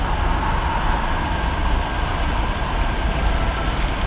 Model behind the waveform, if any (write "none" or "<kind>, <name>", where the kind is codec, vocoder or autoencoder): none